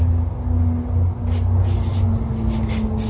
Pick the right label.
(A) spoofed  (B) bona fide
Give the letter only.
B